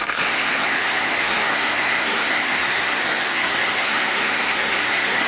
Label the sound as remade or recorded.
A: remade